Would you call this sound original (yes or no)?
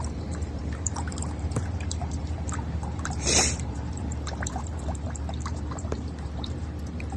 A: no